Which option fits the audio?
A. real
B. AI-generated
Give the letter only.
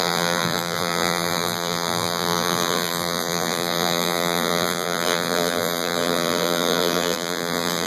B